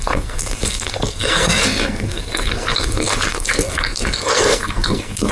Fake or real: fake